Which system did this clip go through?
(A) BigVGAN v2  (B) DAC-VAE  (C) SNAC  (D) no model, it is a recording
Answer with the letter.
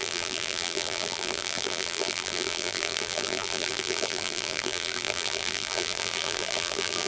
A